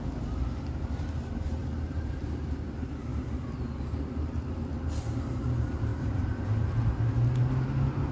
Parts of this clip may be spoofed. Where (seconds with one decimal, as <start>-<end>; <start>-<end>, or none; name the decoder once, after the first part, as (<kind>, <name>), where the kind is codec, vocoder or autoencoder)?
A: 1.6-2.2 (vocoder, BigVGAN v2); 5.9-6.8